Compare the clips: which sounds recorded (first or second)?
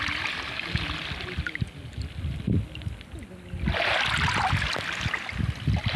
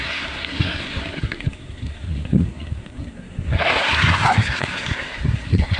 first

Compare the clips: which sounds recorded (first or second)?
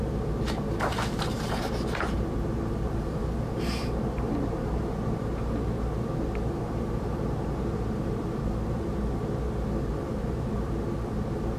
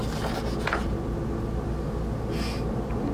second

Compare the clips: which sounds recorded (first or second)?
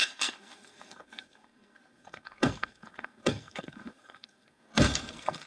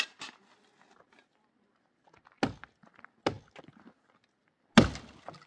second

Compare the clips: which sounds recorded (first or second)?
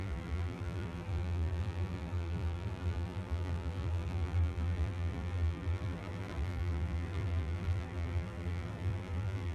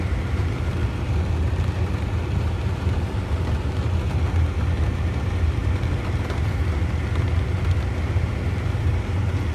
second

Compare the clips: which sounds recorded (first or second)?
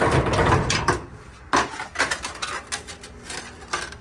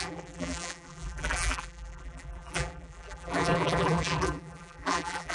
first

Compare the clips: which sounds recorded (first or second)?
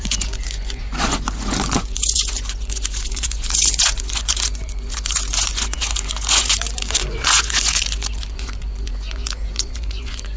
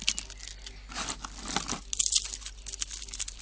second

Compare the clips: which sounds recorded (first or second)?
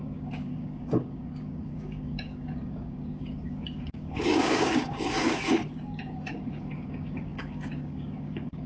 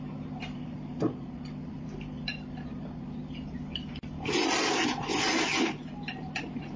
second